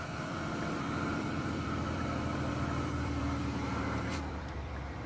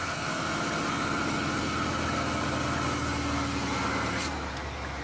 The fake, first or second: first